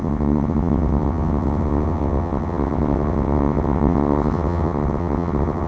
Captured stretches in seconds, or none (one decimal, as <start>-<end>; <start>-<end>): none